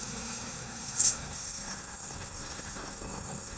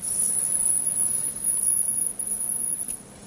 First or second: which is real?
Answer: second